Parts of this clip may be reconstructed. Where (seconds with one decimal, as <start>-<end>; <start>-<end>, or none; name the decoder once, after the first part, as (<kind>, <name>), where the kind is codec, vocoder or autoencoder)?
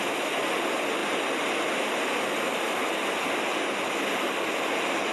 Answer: none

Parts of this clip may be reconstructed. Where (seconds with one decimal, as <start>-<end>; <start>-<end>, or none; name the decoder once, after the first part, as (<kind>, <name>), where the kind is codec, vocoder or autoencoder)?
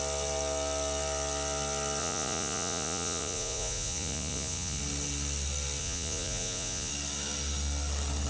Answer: 2.0-4.8 (vocoder, Vocos); 5.8-6.9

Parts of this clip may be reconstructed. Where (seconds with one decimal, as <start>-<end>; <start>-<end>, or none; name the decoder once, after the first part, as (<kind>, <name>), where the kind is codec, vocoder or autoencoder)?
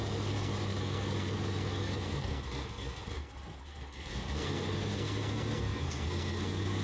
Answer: 0.0-6.8 (codec, SNAC)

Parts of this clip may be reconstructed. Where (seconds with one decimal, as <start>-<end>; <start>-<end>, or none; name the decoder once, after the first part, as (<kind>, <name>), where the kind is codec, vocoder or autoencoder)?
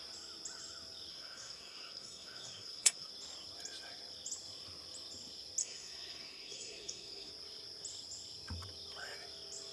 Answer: 1.1-3.1 (codec, SNAC); 5.6-7.3